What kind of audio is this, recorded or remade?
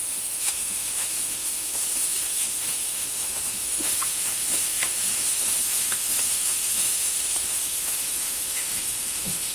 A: remade